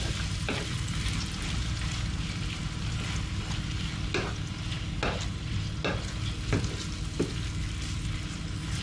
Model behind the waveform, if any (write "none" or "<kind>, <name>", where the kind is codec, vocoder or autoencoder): none